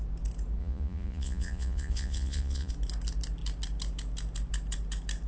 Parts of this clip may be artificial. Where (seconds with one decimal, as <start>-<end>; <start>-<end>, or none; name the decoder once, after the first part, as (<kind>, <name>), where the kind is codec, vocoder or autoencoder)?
0.6-2.7 (vocoder, Vocos)

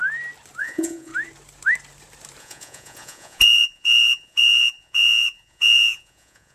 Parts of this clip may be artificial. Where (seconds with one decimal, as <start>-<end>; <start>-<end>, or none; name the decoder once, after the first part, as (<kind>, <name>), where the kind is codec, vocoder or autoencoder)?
0.6-1.1 (vocoder, Vocos); 2.4-6.5

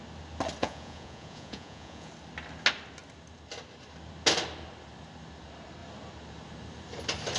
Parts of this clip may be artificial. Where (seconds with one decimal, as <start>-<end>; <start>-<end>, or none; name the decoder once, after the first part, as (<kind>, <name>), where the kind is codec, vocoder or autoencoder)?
0.6-2.1 (vocoder, Vocos)

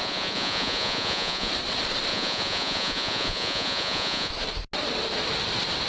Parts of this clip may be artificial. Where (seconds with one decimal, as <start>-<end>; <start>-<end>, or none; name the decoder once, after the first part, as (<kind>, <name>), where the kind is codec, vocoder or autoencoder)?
0.0-1.5 (vocoder, Vocos); 2.1-4.3

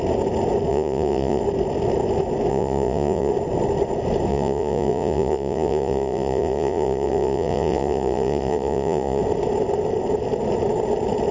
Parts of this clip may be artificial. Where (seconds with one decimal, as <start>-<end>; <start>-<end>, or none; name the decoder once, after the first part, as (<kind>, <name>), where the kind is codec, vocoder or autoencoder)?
0.7-1.4 (vocoder, Vocos); 2.5-3.3; 4.3-9.2